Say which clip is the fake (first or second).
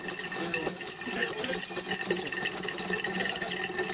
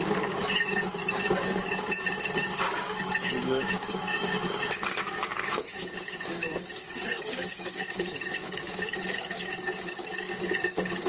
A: second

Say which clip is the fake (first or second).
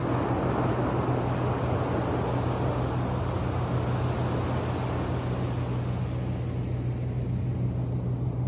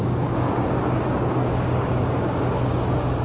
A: second